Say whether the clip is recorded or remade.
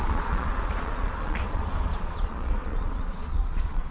remade